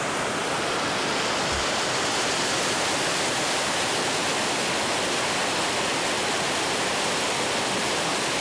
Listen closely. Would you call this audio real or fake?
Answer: real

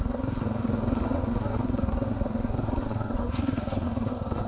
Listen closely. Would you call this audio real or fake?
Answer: fake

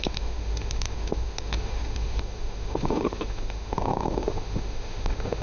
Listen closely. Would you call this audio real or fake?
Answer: fake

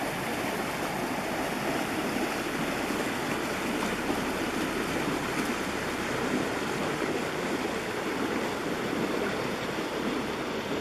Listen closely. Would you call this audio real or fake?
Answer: real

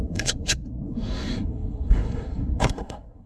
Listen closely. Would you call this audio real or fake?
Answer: fake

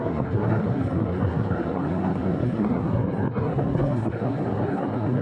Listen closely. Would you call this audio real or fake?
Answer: fake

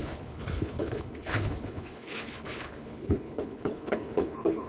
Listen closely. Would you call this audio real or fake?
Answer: fake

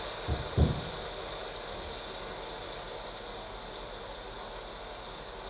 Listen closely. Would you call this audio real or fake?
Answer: real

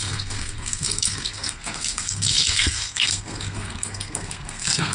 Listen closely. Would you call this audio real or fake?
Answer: fake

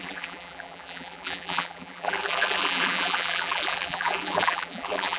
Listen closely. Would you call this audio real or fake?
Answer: fake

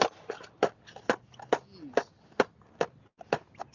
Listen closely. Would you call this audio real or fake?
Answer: real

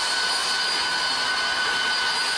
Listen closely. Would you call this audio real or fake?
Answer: real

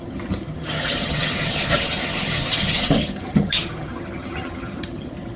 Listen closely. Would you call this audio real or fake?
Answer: fake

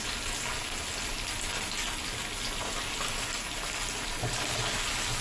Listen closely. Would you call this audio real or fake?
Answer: real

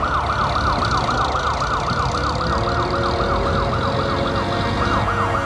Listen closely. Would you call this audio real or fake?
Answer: real